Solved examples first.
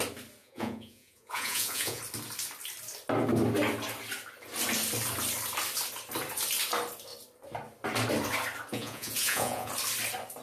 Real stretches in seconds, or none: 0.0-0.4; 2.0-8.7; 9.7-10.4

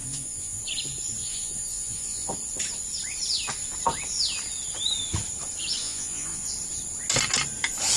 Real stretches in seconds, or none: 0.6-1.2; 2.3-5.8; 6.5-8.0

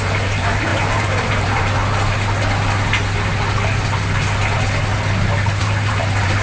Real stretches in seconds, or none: 1.8-5.6

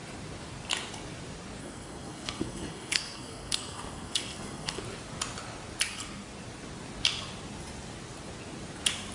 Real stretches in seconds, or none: 0.0-1.6; 4.8-9.1